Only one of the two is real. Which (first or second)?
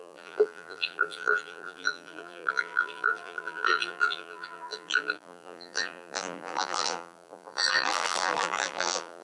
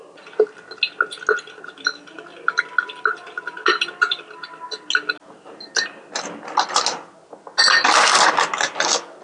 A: second